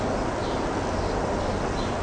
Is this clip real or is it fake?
real